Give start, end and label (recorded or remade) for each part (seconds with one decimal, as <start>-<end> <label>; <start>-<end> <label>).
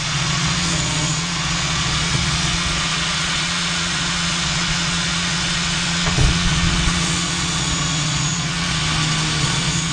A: 0.0-8.8 remade; 8.8-9.4 recorded; 9.4-9.9 remade